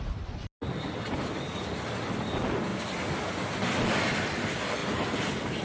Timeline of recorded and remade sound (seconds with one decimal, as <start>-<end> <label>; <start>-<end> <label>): 0.0-5.6 recorded